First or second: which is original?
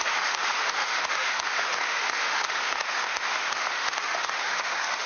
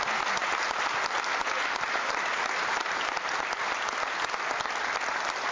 second